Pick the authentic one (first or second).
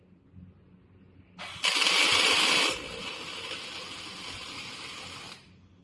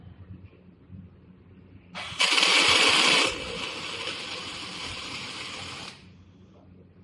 first